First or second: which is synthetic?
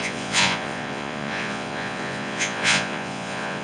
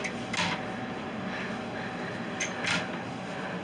first